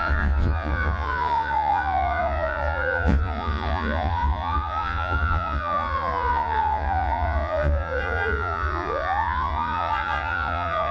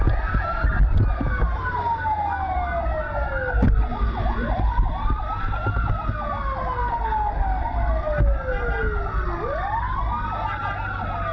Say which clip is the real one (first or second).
second